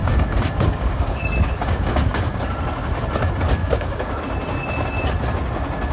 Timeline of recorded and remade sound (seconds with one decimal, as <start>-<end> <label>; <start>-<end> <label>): 0.0-2.4 remade; 2.4-3.6 recorded; 3.6-4.2 remade; 4.2-5.9 recorded